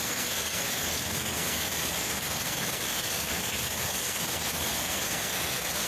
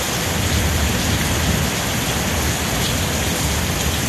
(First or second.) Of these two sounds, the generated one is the first